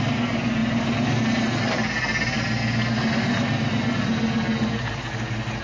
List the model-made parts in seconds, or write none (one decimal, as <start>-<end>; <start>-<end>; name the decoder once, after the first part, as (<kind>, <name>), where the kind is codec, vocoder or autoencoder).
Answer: none